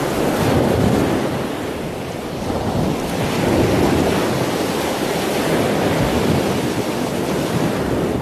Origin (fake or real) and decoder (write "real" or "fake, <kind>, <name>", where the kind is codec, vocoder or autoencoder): real